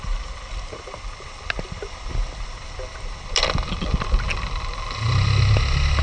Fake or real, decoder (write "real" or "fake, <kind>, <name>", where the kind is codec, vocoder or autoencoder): real